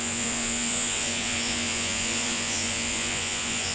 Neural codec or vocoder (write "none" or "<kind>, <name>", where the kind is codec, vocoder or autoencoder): vocoder, Vocos